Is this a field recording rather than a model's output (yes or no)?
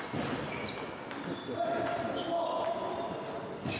yes